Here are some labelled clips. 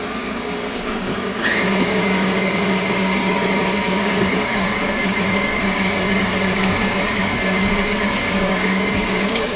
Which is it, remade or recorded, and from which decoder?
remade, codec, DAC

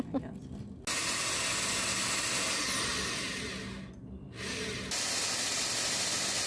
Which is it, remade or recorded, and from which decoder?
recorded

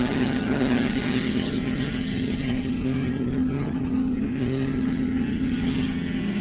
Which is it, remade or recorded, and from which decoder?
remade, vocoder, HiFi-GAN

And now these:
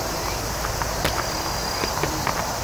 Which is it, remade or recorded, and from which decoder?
recorded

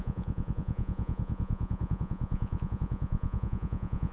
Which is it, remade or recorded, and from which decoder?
remade, vocoder, Vocos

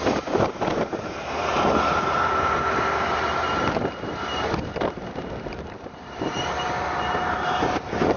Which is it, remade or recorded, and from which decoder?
remade, vocoder, BigVGAN v2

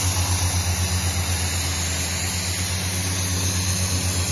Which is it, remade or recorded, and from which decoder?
recorded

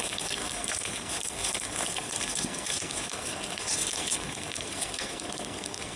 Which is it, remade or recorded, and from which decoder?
remade, codec, SNAC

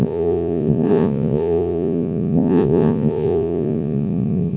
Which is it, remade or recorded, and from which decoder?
remade, vocoder, Vocos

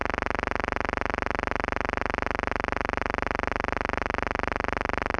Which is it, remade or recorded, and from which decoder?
recorded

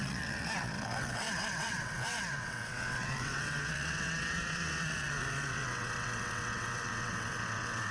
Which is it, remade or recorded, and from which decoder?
remade, vocoder, WaveNeXt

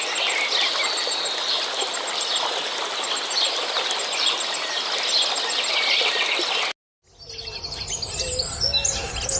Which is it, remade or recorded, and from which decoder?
recorded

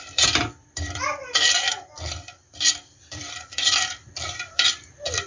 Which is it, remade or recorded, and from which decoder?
remade, vocoder, BigVGAN v2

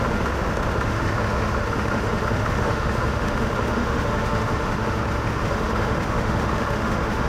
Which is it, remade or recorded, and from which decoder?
remade, autoencoder, DAC-VAE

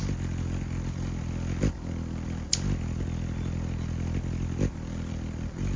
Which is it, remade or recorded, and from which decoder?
recorded